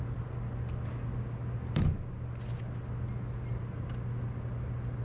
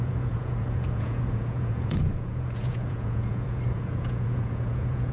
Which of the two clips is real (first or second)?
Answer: first